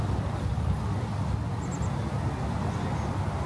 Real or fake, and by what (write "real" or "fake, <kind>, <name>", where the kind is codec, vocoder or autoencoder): real